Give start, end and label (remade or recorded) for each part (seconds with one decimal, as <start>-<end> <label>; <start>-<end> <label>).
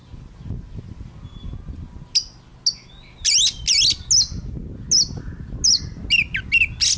0.0-7.0 recorded